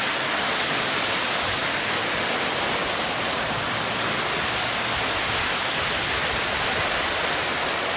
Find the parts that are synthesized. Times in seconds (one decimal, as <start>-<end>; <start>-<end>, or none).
none